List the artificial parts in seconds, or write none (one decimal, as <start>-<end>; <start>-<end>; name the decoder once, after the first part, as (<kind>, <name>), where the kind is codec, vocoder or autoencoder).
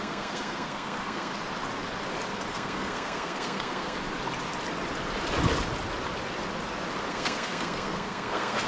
0.0-1.3 (codec, SNAC); 2.5-4.0; 7.1-8.7